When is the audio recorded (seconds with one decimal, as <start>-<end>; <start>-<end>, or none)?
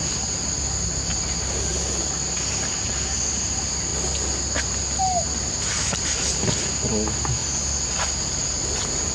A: 0.0-9.1